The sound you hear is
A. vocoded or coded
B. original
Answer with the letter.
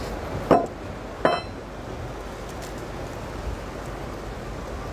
B